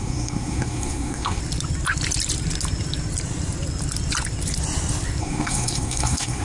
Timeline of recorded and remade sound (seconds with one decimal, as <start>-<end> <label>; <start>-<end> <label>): 0.0-1.4 remade; 1.4-5.2 recorded; 5.2-6.4 remade